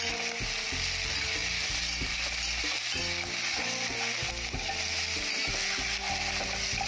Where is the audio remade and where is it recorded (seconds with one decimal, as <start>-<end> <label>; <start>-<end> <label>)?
0.0-6.9 recorded